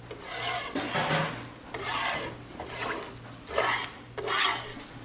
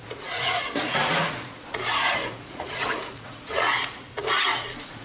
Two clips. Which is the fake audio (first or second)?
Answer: second